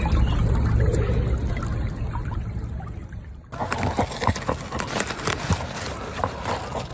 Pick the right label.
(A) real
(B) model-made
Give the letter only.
A